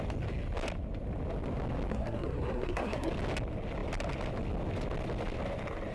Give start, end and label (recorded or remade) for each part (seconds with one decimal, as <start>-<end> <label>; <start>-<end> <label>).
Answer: 0.0-1.9 recorded; 1.9-3.1 remade; 3.1-5.9 recorded